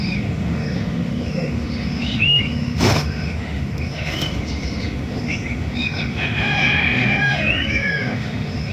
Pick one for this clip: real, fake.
fake